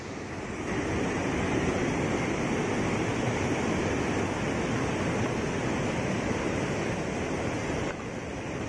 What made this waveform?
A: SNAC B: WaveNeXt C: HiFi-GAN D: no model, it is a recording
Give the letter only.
D